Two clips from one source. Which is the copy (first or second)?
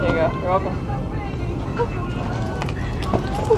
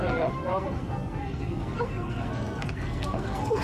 second